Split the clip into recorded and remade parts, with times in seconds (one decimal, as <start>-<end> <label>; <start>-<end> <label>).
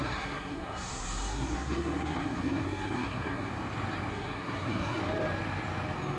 0.0-3.5 remade; 3.5-4.1 recorded; 4.1-5.0 remade; 5.0-6.2 recorded